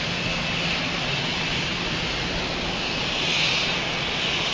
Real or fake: real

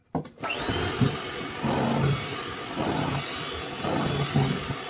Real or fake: real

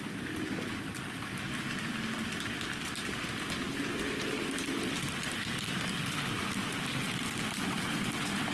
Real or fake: real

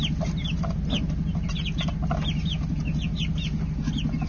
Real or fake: real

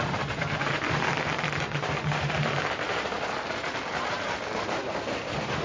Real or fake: fake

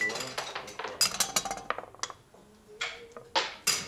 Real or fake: real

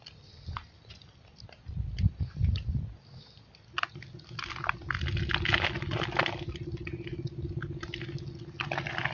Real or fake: real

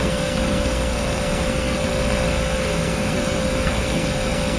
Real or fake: fake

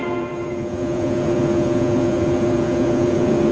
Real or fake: fake